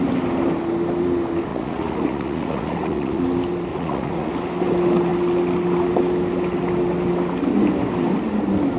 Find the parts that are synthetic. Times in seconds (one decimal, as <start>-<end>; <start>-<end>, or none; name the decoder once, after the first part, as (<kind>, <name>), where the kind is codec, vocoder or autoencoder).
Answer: 1.5-3.2 (vocoder, Vocos); 3.7-4.3